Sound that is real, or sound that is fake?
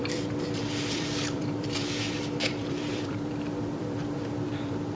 fake